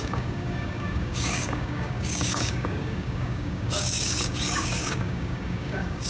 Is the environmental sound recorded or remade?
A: remade